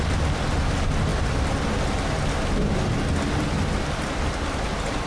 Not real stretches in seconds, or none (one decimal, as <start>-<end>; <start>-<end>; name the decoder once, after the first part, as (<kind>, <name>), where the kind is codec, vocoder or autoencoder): none